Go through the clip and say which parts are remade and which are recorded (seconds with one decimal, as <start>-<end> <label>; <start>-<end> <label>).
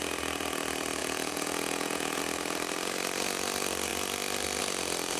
0.0-1.0 recorded; 1.0-2.2 remade; 2.2-5.2 recorded